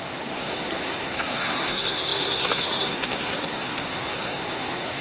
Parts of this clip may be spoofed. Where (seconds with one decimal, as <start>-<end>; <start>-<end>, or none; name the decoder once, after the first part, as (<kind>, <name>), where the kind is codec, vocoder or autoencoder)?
0.0-5.0 (codec, SNAC)